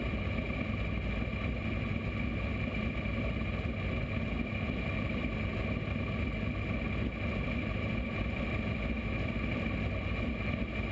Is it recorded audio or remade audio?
recorded